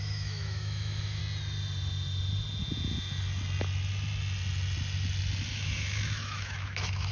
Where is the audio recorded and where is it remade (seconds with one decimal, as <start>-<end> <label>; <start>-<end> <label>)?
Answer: 0.0-1.2 remade; 1.2-5.5 recorded; 5.5-7.1 remade